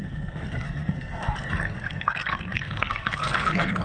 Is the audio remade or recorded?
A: remade